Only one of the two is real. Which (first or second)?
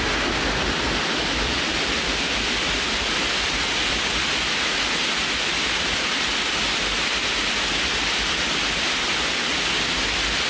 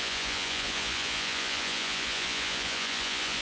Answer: first